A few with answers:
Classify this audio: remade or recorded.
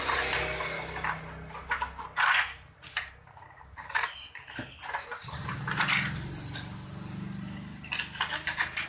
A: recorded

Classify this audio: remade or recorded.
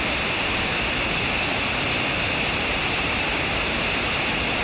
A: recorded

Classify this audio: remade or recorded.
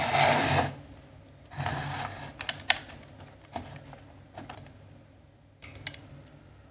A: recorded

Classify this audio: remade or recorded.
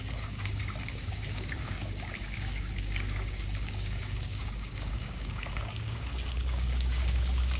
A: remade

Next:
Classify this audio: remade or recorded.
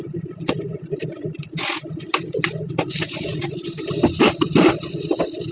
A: recorded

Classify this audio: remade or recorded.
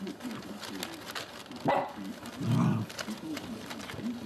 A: recorded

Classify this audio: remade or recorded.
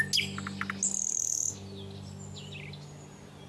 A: recorded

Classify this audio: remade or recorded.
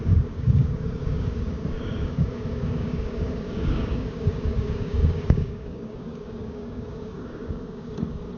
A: remade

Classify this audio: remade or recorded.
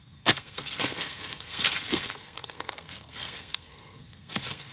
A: remade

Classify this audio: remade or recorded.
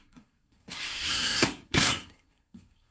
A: remade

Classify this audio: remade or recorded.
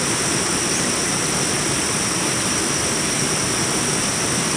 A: recorded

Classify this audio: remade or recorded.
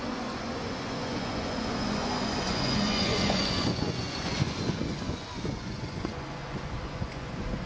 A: remade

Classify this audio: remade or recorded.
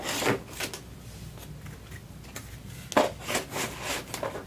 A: recorded